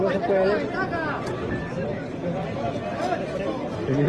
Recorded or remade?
recorded